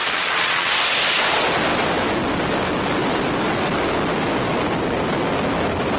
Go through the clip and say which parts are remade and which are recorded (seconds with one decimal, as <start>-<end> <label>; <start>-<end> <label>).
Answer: 0.0-0.7 remade; 0.7-6.0 recorded